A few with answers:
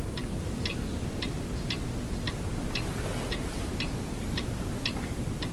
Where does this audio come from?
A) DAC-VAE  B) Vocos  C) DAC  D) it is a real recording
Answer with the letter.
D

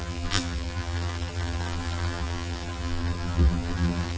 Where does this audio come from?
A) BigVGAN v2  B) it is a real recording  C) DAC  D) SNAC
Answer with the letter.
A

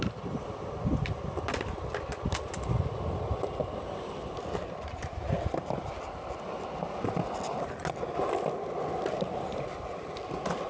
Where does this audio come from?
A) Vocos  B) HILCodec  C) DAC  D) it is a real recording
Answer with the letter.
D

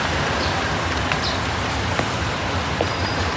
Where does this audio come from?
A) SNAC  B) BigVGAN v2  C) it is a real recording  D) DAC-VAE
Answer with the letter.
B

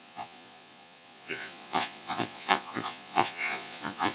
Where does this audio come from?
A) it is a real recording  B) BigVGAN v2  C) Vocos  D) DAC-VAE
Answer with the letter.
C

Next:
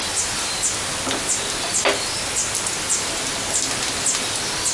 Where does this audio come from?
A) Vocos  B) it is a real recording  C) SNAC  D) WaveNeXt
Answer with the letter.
B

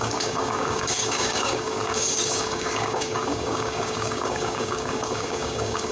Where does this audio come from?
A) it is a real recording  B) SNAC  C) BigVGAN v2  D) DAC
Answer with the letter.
D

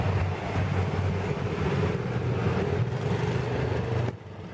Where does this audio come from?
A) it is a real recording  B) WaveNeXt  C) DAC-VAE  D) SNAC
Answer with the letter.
A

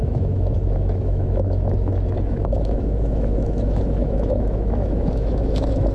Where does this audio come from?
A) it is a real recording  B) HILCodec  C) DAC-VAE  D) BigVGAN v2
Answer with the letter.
C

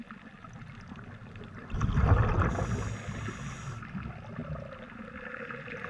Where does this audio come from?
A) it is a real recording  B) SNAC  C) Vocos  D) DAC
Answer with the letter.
A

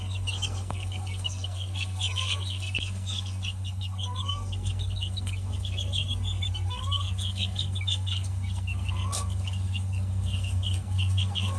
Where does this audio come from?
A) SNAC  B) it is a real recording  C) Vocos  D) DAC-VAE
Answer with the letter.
A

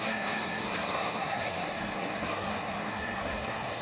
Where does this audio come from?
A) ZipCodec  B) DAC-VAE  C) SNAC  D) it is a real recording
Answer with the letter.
C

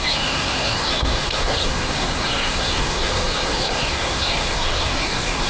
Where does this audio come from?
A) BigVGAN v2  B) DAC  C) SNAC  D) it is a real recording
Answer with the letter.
C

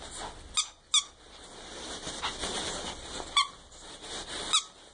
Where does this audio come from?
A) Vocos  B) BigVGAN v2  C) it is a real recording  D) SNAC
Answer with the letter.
C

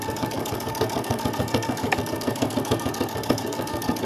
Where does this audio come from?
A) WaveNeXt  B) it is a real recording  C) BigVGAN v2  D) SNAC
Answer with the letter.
D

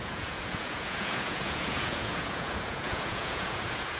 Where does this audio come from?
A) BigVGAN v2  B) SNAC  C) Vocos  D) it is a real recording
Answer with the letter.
C